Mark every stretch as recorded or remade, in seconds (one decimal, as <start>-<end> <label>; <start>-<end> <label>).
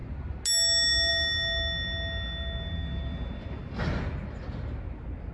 0.0-5.3 recorded